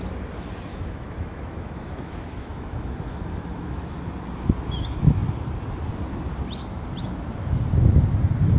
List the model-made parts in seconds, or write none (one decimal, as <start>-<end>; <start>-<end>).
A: 0.7-3.9